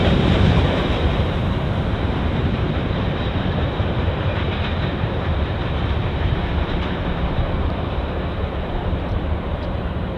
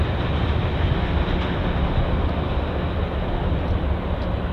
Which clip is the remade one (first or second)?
first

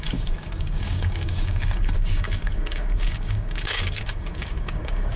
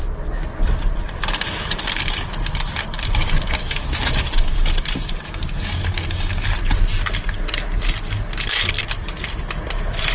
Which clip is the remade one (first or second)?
first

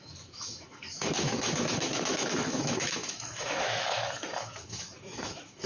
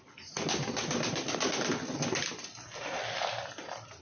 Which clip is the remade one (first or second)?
first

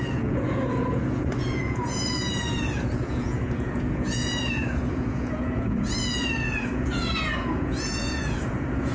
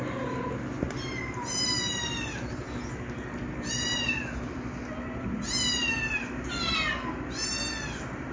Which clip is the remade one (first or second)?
first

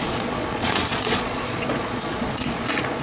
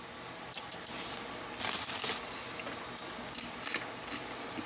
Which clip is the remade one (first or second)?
first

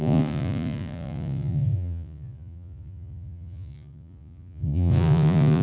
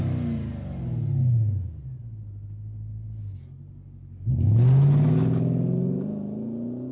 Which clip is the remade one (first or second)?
first